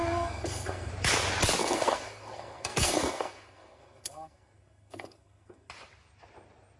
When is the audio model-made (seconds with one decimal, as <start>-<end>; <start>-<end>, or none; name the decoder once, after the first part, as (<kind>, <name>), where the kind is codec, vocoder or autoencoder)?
0.0-0.9 (codec, SNAC); 1.6-5.7